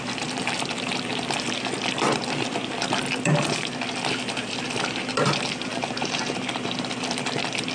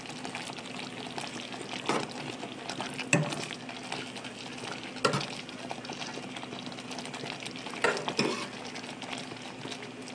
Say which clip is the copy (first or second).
first